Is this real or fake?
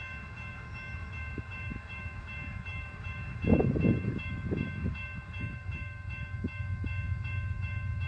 fake